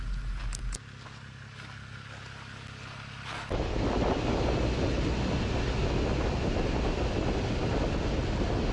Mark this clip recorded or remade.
recorded